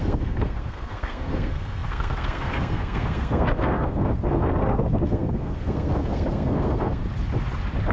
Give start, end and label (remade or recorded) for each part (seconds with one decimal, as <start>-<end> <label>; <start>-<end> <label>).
0.0-7.0 remade; 7.0-7.9 recorded